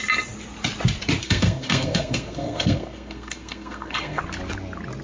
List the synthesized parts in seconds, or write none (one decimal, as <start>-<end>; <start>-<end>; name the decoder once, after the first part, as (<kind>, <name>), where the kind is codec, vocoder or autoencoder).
1.2-4.2 (codec, SNAC)